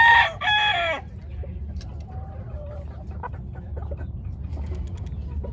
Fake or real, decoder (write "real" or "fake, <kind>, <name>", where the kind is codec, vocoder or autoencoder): real